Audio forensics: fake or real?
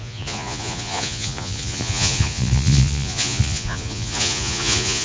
fake